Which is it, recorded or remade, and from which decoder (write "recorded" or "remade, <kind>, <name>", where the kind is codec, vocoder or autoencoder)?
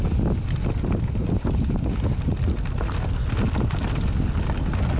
recorded